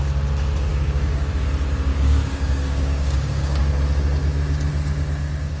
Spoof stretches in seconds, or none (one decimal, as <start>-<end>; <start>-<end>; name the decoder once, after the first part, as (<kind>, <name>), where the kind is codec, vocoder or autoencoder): 0.7-1.3 (codec, DAC); 1.9-3.7